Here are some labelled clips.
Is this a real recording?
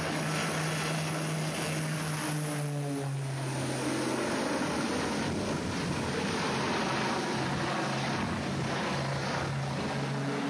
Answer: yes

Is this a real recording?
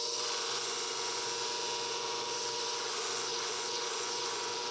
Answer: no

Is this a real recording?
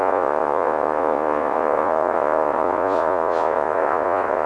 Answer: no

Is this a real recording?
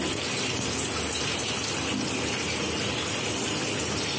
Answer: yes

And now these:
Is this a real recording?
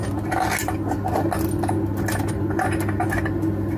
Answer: yes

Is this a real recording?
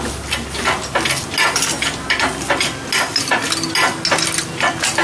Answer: yes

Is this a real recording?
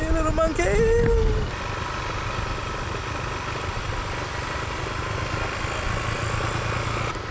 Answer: yes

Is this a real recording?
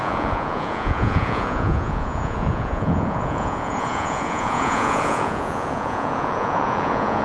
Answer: no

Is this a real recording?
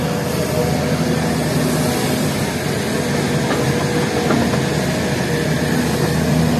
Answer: yes